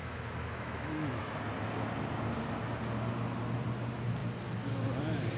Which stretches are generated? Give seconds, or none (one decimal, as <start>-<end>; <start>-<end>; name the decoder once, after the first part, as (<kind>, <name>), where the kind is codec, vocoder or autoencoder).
0.0-1.2 (autoencoder, DAC-VAE)

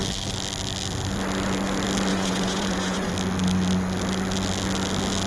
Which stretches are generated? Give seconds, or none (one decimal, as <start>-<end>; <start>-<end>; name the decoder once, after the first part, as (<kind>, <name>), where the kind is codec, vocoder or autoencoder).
2.1-3.1 (vocoder, Vocos)

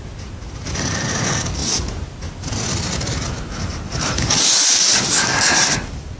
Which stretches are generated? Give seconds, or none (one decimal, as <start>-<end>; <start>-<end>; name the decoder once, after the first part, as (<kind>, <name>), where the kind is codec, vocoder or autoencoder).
none